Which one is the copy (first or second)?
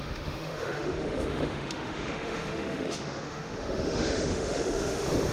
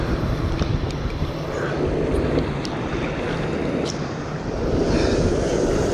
first